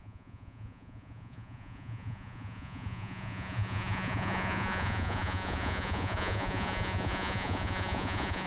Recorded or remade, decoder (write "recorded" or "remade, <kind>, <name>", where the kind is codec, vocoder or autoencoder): remade, vocoder, Vocos